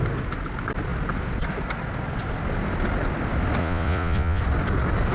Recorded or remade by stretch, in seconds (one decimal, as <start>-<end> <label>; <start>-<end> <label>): 0.0-3.6 recorded; 3.6-4.4 remade; 4.4-5.1 recorded